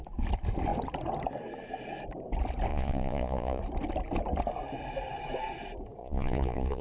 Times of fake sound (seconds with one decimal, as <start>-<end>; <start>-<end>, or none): 2.7-3.6; 6.0-6.8